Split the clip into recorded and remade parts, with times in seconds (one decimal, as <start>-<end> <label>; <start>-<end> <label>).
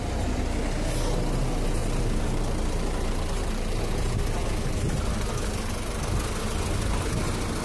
0.0-1.8 recorded; 1.8-3.8 remade; 3.8-7.6 recorded